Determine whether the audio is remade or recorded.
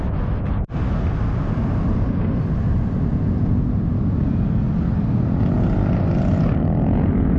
recorded